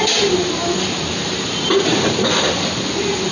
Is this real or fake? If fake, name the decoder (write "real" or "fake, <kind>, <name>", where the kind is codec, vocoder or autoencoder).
real